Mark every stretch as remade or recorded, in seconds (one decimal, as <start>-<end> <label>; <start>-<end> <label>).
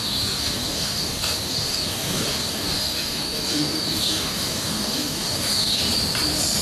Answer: 0.0-5.8 remade; 5.8-6.6 recorded